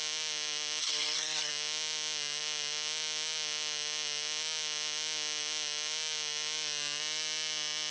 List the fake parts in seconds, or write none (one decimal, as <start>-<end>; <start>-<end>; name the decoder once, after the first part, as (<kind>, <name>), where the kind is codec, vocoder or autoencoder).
0.8-1.5 (codec, SNAC)